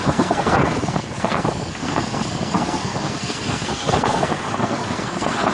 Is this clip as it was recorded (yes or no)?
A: no